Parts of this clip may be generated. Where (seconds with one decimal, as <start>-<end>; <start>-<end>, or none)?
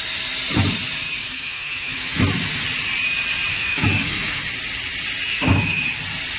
1.2-2.2; 3.5-4.4; 5.3-5.8